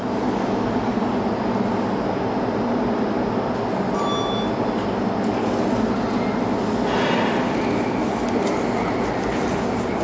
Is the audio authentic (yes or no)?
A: yes